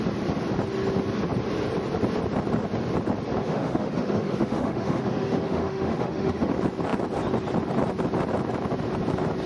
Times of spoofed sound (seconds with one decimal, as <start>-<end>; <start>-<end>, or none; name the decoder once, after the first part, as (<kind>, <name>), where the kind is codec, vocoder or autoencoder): 3.4-6.5 (autoencoder, DAC-VAE)